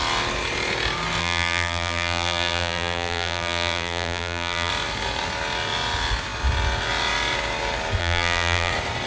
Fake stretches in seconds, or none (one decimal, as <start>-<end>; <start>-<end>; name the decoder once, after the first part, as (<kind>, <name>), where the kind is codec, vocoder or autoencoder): 1.2-4.7 (vocoder, BigVGAN v2); 8.0-8.7